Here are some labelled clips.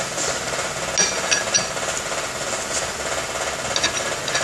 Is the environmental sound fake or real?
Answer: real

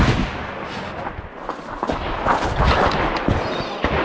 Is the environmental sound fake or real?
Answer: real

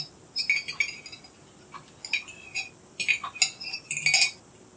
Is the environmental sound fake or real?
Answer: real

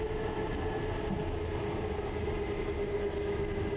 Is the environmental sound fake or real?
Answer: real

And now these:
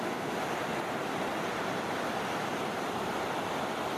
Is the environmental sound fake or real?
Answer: real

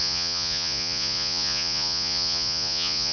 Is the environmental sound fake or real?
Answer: fake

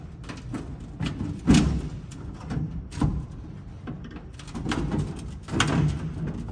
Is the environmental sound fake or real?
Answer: real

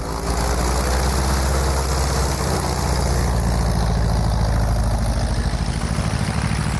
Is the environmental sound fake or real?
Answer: real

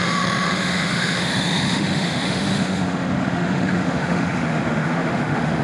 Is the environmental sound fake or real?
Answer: fake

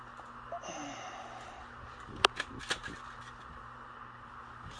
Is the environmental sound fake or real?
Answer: real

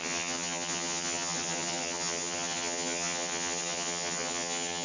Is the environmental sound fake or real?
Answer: fake